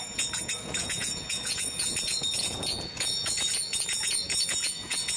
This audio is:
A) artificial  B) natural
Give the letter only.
A